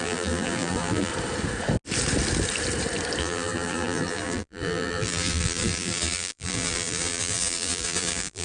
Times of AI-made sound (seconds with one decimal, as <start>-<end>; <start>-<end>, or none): 0.0-1.1; 3.2-8.4